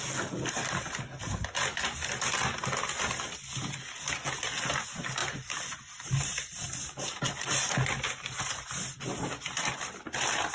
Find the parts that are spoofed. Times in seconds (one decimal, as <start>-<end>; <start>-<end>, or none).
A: 5.2-8.8